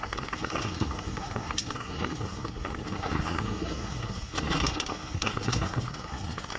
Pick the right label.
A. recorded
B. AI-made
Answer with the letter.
B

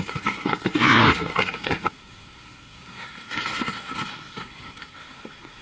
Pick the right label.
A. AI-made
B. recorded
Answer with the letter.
A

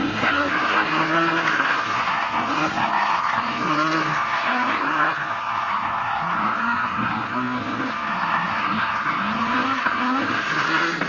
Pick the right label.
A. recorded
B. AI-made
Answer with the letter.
B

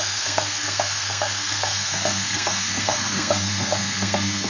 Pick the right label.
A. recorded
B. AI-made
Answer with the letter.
B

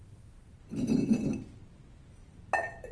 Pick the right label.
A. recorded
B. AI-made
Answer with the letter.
A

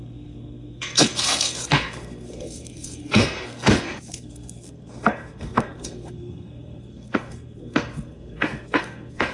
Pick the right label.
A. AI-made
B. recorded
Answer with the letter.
A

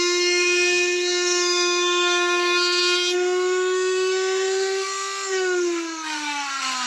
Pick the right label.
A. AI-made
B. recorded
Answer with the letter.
A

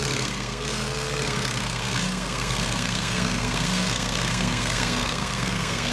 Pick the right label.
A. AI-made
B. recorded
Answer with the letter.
A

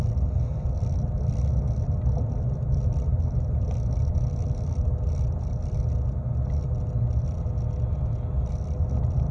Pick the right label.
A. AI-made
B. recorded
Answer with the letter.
B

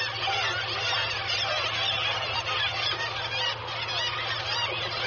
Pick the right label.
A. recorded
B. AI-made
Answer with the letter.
A